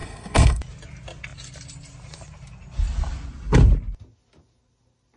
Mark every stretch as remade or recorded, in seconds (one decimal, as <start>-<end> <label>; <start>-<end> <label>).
0.0-0.6 remade; 0.6-5.2 recorded